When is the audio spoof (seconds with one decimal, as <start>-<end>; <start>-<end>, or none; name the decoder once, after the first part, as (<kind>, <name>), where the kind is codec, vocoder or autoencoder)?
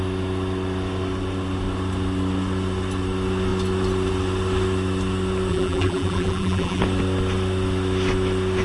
5.5-6.8 (vocoder, BigVGAN v2)